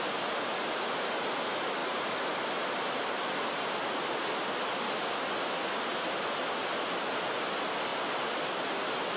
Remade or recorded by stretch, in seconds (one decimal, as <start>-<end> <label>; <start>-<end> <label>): 0.0-9.2 recorded